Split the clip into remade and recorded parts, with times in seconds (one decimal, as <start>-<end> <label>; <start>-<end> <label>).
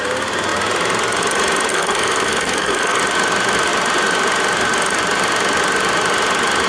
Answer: 0.0-1.7 recorded; 1.7-3.0 remade; 3.0-6.7 recorded